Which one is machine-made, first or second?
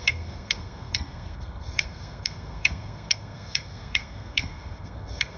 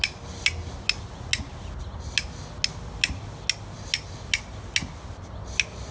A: first